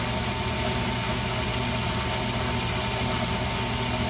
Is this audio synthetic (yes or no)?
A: no